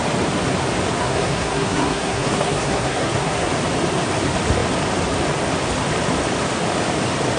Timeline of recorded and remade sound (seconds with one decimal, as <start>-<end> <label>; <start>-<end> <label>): 0.0-1.0 recorded; 1.0-3.5 remade; 3.5-7.4 recorded